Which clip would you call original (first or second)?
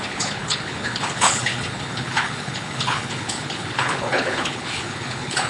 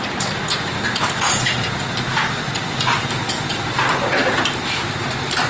second